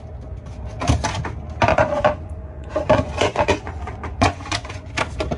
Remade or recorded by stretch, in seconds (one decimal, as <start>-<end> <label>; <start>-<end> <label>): 0.0-1.7 recorded; 1.7-4.9 remade; 4.9-5.4 recorded